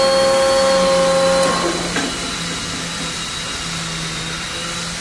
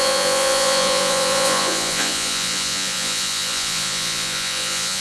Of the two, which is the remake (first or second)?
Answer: second